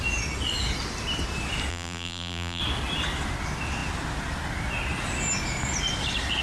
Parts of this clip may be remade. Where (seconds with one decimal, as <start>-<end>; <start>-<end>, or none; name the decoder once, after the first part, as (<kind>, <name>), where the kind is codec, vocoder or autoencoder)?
1.7-2.6 (vocoder, BigVGAN v2)